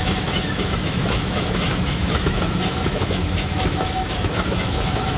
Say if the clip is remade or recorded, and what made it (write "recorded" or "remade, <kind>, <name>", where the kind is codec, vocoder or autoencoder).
remade, autoencoder, DAC-VAE